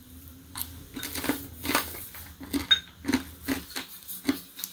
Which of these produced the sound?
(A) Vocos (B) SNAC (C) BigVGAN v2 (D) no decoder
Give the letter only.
D